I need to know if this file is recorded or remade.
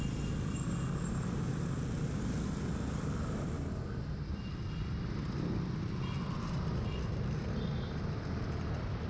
recorded